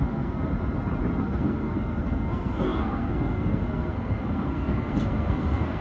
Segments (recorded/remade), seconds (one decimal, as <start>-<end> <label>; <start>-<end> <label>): 0.0-0.5 remade; 0.5-1.2 recorded; 1.2-5.8 remade